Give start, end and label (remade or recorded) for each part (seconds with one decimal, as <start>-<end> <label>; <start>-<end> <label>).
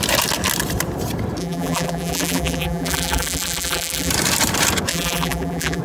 0.0-1.4 recorded; 1.4-4.1 remade; 4.1-4.9 recorded; 4.9-5.8 remade